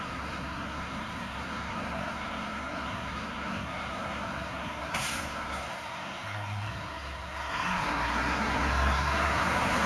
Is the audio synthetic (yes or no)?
yes